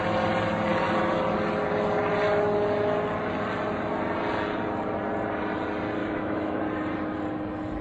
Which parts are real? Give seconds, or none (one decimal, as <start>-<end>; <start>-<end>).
0.0-6.0; 6.6-7.8